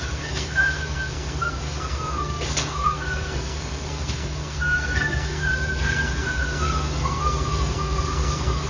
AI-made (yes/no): yes